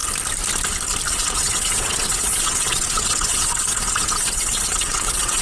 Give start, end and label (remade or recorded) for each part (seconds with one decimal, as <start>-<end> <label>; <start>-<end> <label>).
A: 0.0-1.1 recorded; 1.1-5.4 remade